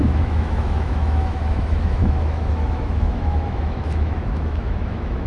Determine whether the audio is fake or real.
fake